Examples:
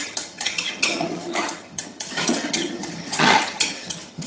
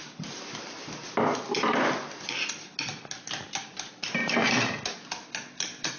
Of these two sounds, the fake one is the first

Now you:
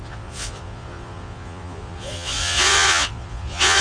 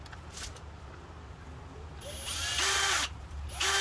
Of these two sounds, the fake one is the first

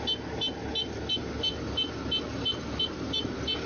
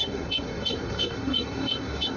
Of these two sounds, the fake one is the second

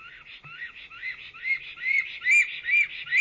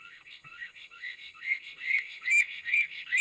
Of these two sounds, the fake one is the second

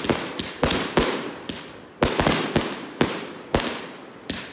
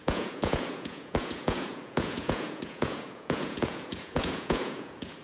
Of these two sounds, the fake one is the second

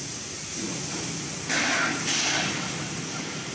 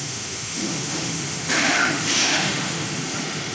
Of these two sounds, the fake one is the second